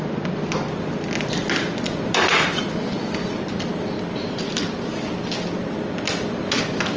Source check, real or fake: real